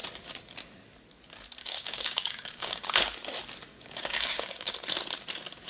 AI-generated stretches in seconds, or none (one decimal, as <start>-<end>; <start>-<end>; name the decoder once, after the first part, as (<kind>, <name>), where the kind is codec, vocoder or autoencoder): 1.6-2.8 (codec, DAC); 3.7-4.7